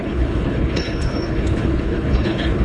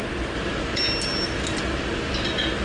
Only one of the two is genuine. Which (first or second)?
second